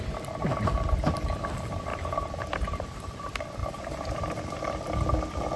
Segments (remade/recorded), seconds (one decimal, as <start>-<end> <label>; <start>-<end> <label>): 0.0-1.9 recorded; 1.9-2.8 remade; 2.8-3.6 recorded; 3.6-4.2 remade; 4.2-5.6 recorded